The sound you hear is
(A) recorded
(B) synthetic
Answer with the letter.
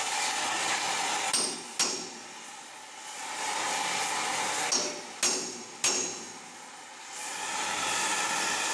A